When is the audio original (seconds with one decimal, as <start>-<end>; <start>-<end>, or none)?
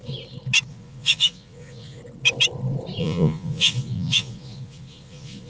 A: 0.0-0.7; 2.0-3.0